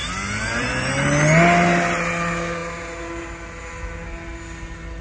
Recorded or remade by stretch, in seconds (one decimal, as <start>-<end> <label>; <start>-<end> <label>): 0.0-5.0 recorded